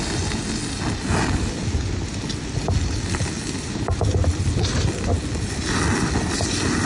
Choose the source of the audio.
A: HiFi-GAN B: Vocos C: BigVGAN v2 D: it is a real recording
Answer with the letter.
D